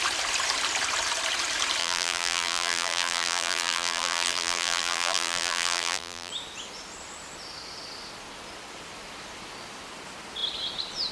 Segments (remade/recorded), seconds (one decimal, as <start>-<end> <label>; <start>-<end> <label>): 0.0-1.8 recorded; 1.8-6.3 remade; 6.3-11.1 recorded